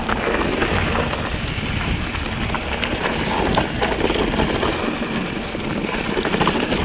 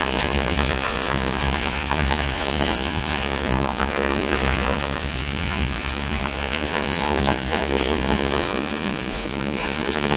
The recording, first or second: first